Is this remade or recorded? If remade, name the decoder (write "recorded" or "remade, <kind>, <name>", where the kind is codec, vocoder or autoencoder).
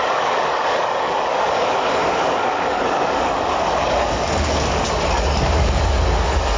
remade, codec, DAC